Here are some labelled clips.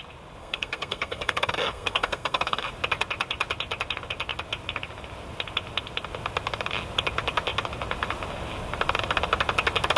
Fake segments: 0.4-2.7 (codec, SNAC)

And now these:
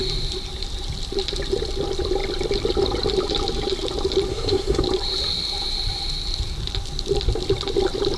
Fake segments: 4.3-4.8 (codec, SNAC)

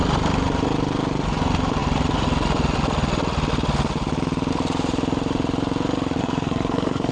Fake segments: 6.2-7.1 (codec, SNAC)

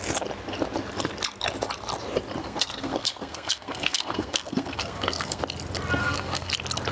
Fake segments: 2.4-5.4 (codec, SNAC); 6.0-6.5